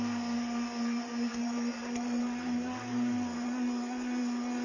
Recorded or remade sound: recorded